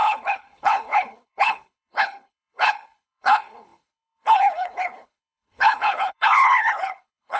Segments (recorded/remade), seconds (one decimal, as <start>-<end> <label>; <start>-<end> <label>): 0.0-7.4 remade